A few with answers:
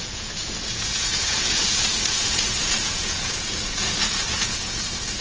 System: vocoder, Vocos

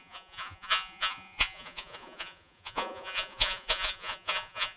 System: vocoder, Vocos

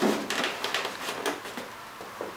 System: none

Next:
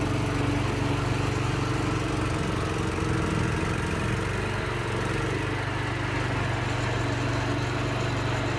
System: none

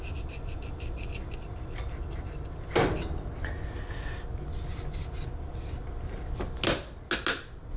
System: none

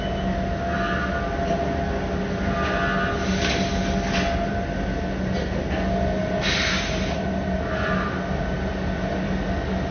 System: none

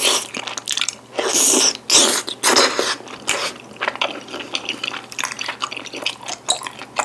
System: none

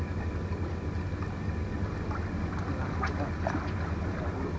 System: none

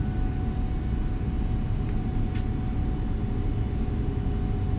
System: none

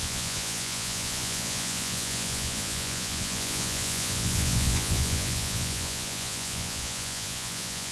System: vocoder, Vocos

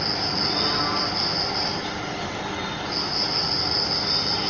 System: none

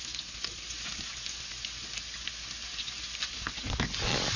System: none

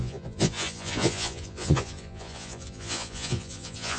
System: vocoder, Vocos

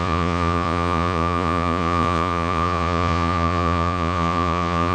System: vocoder, Vocos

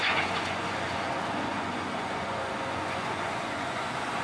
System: vocoder, Vocos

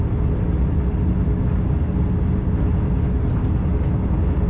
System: none